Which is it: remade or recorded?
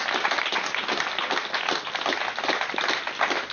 recorded